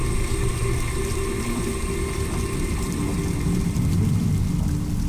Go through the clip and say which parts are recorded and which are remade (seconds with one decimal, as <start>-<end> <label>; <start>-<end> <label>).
0.0-5.1 recorded